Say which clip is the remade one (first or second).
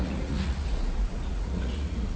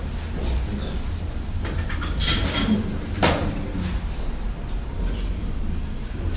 first